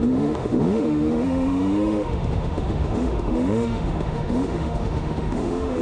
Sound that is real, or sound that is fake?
fake